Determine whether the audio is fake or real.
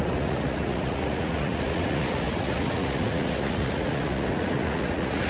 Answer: fake